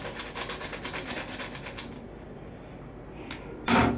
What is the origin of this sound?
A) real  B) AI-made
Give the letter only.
A